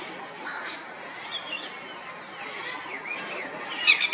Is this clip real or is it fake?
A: real